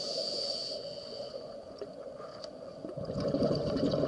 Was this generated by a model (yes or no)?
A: yes